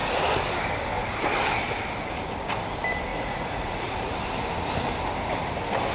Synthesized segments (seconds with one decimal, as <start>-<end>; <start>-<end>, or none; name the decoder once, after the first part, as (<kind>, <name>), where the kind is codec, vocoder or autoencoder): 3.1-4.1 (vocoder, Vocos)